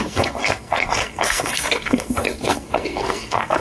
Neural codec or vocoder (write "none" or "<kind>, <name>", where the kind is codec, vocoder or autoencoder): codec, SNAC